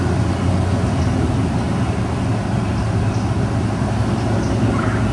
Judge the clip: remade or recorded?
recorded